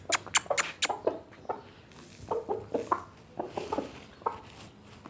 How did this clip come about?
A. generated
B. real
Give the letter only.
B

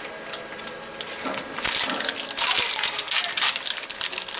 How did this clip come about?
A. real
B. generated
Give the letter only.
A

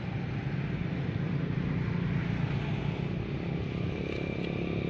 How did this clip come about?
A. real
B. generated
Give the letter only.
A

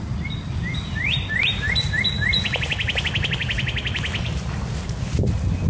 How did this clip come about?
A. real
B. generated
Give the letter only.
A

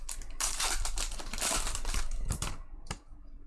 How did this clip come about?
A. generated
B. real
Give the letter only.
A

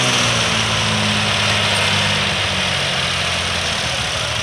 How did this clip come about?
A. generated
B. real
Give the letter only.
B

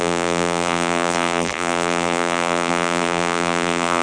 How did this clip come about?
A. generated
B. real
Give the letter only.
A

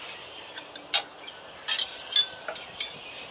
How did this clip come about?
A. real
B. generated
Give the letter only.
A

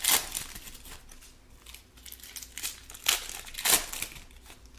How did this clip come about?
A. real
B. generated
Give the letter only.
A